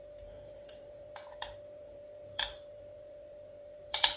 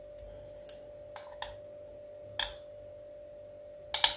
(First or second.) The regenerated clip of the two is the first